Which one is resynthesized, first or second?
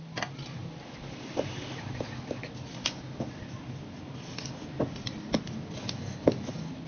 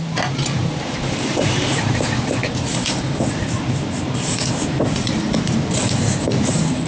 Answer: second